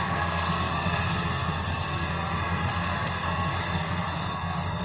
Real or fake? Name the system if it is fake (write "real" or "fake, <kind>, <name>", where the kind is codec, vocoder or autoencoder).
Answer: fake, codec, SNAC